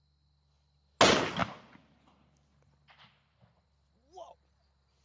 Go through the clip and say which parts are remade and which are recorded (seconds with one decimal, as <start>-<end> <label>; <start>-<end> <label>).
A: 0.0-5.0 recorded